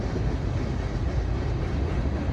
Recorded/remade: recorded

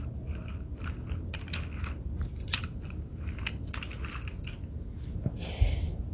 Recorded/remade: recorded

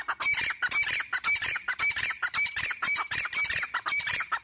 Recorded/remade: recorded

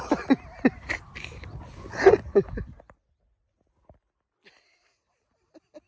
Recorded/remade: recorded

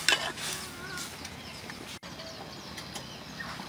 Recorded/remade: recorded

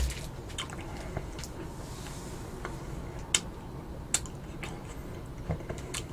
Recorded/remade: recorded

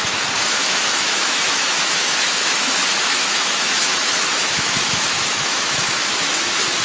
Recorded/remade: remade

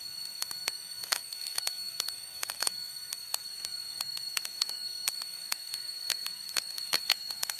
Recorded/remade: remade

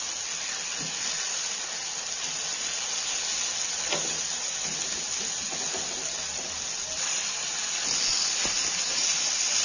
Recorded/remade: recorded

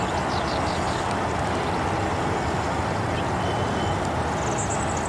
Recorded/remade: recorded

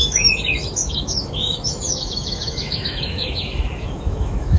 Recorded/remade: remade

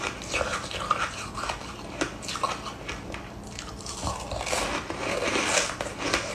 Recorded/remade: recorded